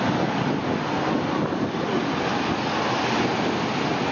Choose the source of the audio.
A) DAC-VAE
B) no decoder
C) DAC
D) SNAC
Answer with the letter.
B